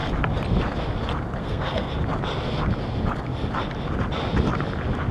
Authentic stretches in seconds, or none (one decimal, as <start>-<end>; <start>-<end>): 0.0-1.4; 1.9-5.1

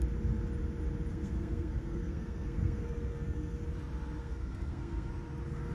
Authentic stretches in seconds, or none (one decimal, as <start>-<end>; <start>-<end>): 0.0-1.1; 3.6-4.2; 5.1-5.7

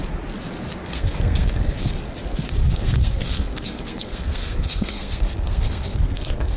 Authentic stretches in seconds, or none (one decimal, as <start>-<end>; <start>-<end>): 0.0-0.8; 1.9-2.6

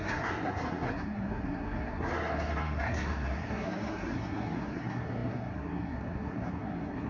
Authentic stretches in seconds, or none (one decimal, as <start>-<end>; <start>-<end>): none

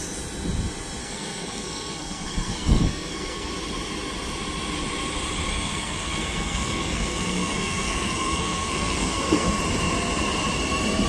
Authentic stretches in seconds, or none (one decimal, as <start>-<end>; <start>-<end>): 0.0-1.0; 3.5-5.5; 9.6-11.1